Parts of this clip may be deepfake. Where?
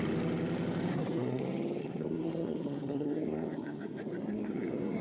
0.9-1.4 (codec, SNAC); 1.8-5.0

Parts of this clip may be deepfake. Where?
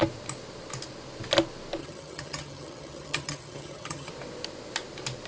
1.8-4.1 (vocoder, HiFi-GAN)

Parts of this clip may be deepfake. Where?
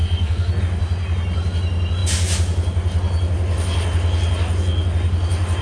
0.0-0.6 (codec, SNAC)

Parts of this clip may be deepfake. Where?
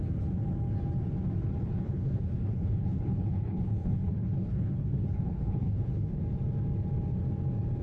1.6-6.2 (codec, HILCodec)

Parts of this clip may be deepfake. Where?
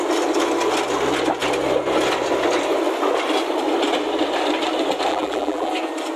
5.1-5.7 (vocoder, BigVGAN v2)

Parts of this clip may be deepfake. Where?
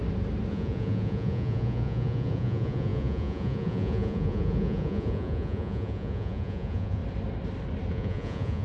0.5-7.0 (vocoder, Vocos); 7.9-8.6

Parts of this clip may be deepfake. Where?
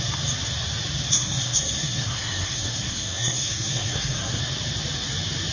1.1-4.4 (codec, SNAC)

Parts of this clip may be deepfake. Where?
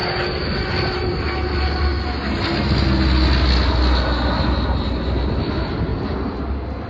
none